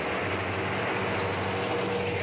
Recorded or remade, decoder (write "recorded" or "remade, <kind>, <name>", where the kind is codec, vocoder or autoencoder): recorded